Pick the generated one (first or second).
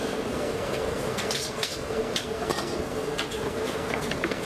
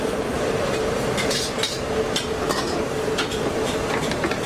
first